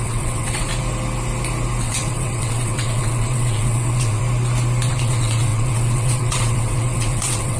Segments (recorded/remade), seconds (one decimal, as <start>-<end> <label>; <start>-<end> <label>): 0.0-0.7 remade; 0.7-1.8 recorded; 1.8-4.2 remade; 4.2-4.9 recorded; 4.9-7.6 remade